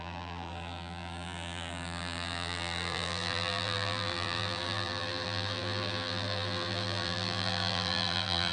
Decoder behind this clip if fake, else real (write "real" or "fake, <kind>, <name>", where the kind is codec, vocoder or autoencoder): fake, vocoder, BigVGAN v2